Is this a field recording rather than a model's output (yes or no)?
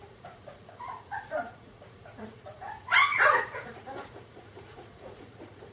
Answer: no